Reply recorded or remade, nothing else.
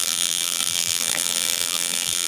remade